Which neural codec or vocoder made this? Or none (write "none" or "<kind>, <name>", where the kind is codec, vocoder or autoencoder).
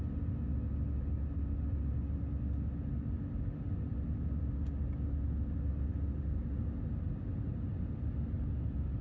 none